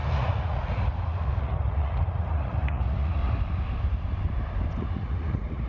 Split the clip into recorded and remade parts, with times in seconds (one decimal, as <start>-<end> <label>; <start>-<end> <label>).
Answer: 0.0-3.2 remade; 3.2-4.8 recorded; 4.8-5.7 remade